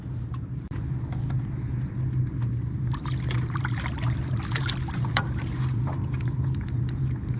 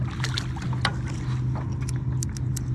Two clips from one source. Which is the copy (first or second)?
first